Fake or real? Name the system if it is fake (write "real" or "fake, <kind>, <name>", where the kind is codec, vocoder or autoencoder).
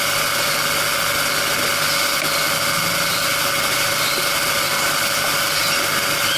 real